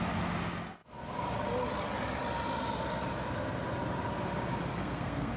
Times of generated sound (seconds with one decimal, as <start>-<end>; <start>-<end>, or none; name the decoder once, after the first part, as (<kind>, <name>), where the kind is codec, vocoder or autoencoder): 4.8-5.4 (codec, SNAC)